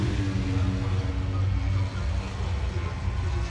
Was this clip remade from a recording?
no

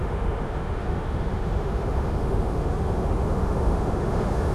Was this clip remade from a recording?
yes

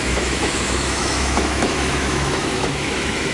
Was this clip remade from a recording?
yes